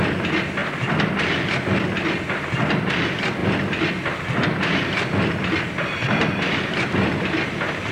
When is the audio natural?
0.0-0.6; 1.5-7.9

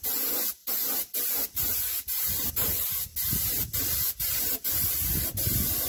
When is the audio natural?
3.1-4.7

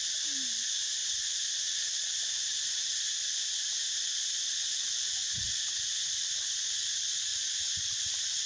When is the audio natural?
0.0-1.0; 4.2-7.3

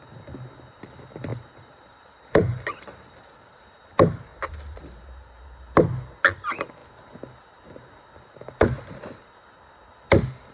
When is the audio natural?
0.0-1.3; 3.6-10.5

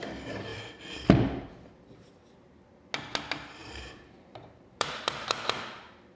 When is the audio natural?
0.0-3.6; 4.9-6.2

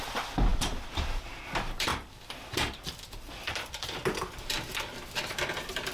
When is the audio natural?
1.9-3.1; 4.0-5.1

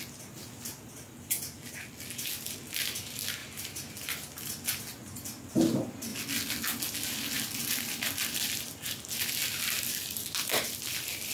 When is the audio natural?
0.0-3.4; 3.9-11.3

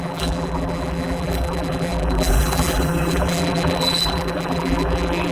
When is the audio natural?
none